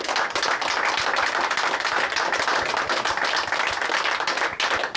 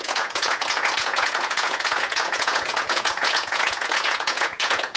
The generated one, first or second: second